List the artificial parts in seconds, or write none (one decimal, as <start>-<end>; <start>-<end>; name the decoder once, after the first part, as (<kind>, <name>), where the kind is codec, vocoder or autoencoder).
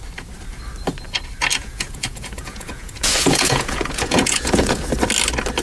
1.5-4.9 (vocoder, Vocos)